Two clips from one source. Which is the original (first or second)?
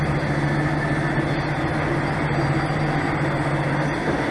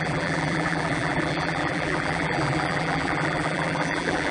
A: first